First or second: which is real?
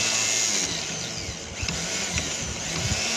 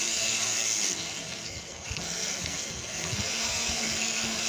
first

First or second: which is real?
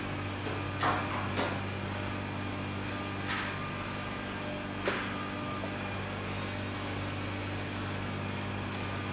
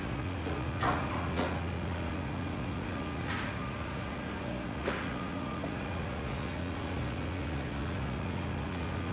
first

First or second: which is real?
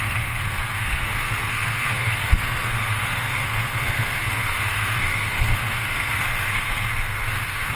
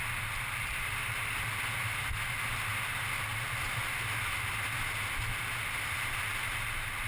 second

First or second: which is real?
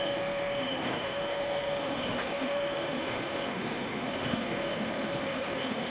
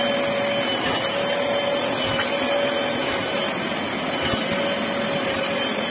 second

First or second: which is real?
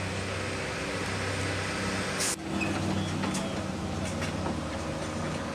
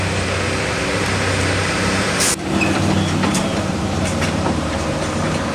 first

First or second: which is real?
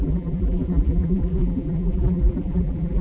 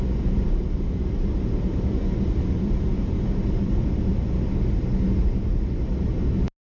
second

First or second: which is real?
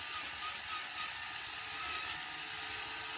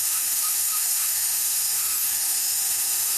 first